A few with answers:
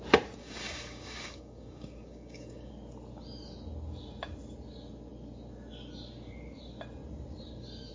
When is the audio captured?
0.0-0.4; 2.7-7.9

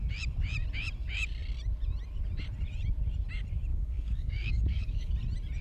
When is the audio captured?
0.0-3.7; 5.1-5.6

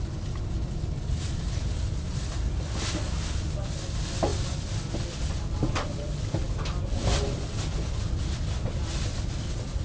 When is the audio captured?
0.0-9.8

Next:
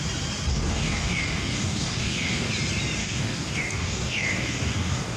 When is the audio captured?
0.0-0.5; 2.5-3.0